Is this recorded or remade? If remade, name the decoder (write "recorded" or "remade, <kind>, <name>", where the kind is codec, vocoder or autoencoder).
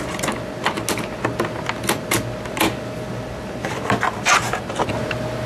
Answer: recorded